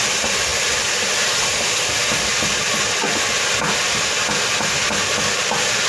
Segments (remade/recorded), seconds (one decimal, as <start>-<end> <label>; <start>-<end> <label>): 0.0-5.9 recorded